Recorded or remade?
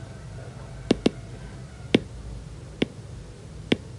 recorded